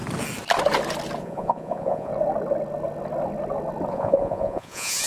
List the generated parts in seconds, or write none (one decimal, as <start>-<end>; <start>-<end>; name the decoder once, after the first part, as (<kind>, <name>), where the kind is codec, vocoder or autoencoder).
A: 1.2-2.1 (vocoder, Vocos); 3.9-5.1